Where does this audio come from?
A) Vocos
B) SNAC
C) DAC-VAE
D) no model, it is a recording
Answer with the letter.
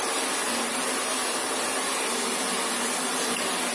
D